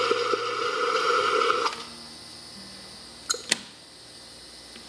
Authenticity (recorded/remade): recorded